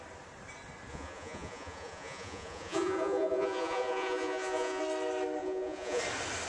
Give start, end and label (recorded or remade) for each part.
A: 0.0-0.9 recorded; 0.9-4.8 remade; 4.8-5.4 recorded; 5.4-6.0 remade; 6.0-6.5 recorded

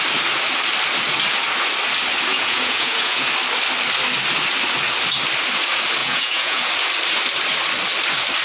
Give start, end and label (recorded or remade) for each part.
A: 0.0-2.3 recorded; 2.3-3.3 remade; 3.3-6.0 recorded; 6.0-6.7 remade; 6.7-8.4 recorded

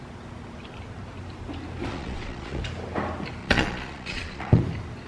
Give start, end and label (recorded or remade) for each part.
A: 0.0-1.9 recorded; 1.9-2.6 remade; 2.6-3.4 recorded; 3.4-4.6 remade; 4.6-5.1 recorded